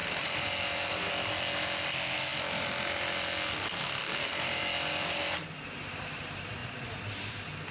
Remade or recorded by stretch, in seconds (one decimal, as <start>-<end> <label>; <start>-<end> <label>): 0.0-1.1 remade; 1.1-4.3 recorded; 4.3-5.2 remade; 5.2-7.7 recorded